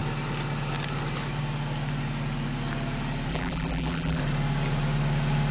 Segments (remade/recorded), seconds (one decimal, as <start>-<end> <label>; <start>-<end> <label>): 0.0-3.3 recorded; 3.3-4.2 remade; 4.2-5.5 recorded